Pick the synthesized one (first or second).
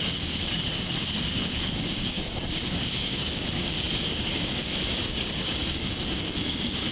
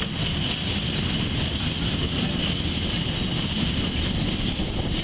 first